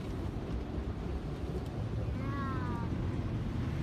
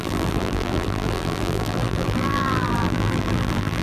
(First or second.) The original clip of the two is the first